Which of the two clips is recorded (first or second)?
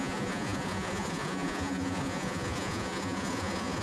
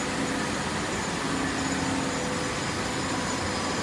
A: second